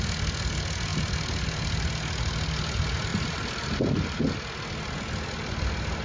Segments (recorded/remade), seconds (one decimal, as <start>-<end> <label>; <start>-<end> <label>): 0.0-3.1 recorded; 3.1-4.2 remade; 4.2-6.0 recorded